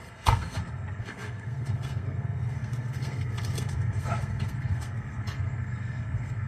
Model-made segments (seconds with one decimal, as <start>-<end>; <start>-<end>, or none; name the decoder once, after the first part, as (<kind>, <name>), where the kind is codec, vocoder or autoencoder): 0.0-6.5 (codec, SNAC)